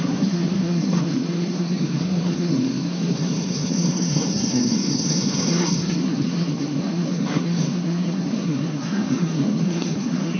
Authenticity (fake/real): fake